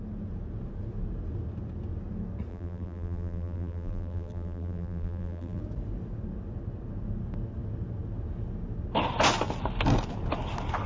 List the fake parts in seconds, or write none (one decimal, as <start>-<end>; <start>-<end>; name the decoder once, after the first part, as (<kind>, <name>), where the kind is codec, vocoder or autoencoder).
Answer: 2.5-5.6 (vocoder, BigVGAN v2)